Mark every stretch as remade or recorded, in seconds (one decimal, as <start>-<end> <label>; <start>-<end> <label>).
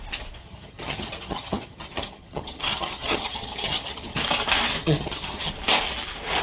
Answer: 0.0-0.4 recorded; 0.4-4.2 remade; 4.2-4.8 recorded; 4.8-5.5 remade; 5.5-6.4 recorded